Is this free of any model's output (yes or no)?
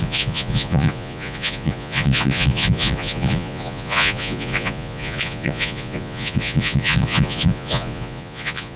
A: no